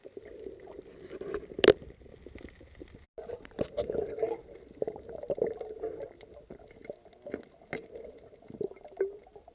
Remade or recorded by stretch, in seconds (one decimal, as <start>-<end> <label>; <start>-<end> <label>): 0.0-2.1 remade; 2.1-3.3 recorded; 3.3-9.5 remade